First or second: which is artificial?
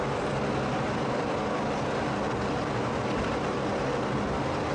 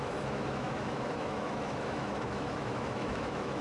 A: second